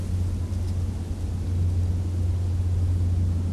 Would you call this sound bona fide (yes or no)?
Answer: yes